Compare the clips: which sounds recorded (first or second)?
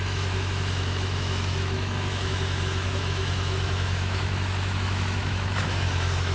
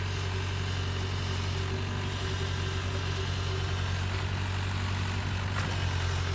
second